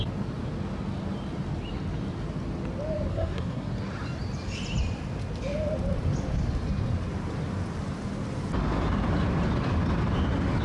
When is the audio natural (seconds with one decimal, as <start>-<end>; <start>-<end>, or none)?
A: 0.0-3.1; 3.7-10.6